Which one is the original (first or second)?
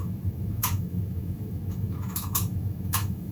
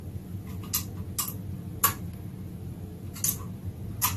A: second